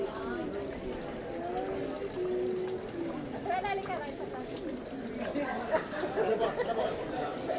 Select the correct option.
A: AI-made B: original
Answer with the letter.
B